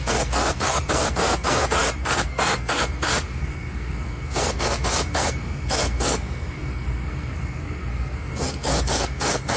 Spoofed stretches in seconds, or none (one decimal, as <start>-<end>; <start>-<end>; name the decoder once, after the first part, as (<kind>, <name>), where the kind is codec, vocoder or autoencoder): 0.0-9.6 (codec, SNAC)

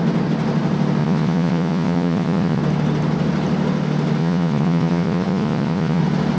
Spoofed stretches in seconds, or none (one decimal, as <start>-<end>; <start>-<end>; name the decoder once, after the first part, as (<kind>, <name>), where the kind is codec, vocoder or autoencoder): 1.0-2.6 (vocoder, Vocos); 4.2-6.0

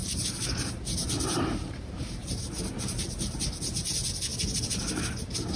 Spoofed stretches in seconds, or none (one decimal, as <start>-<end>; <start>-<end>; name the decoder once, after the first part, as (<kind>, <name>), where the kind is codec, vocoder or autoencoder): 0.0-3.4 (vocoder, BigVGAN v2)

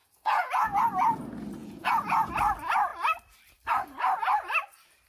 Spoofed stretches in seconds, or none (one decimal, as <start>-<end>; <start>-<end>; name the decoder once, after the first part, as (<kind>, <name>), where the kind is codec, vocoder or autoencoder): 0.0-0.8 (vocoder, Vocos); 1.6-2.3

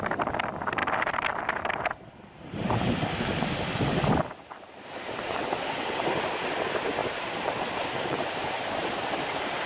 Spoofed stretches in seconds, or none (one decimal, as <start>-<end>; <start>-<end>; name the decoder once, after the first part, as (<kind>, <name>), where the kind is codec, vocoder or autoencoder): 7.0-8.9 (vocoder, BigVGAN v2)